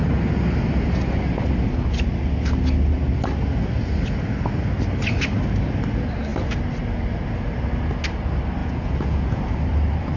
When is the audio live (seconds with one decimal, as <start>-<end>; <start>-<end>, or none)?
0.0-8.6; 9.4-10.2

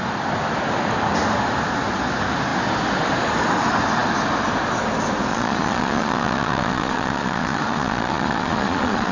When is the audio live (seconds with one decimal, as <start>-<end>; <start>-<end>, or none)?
0.0-5.3

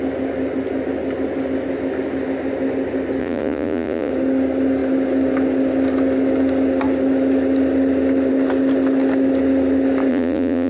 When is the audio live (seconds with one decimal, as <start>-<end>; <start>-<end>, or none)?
0.0-3.2; 4.1-10.1

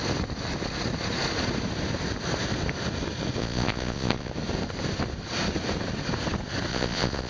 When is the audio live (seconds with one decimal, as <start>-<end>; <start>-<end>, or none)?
0.0-3.4; 4.3-6.7

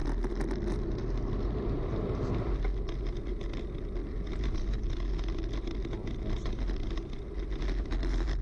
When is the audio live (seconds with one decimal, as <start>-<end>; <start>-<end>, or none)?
0.0-8.4

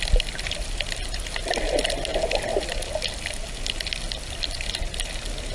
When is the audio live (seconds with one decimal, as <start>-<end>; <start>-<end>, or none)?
0.0-5.5